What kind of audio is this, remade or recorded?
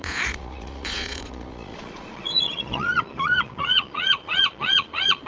remade